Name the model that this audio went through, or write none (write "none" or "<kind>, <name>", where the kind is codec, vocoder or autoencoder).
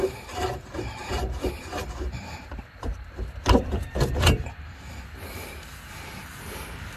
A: vocoder, BigVGAN v2